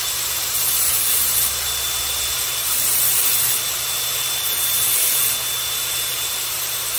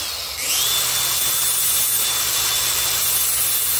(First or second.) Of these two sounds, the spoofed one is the first